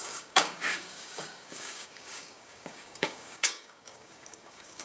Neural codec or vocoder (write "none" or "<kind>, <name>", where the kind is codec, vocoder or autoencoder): codec, DAC